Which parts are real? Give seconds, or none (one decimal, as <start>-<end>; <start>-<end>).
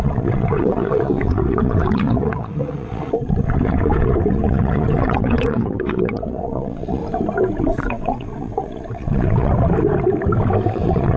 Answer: 7.0-7.6; 9.5-10.7